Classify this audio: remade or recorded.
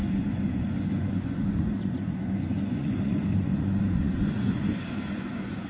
remade